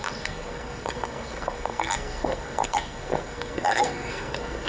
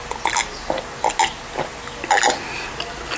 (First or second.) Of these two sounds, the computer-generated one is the first